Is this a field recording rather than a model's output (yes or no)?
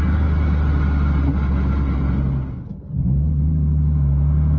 yes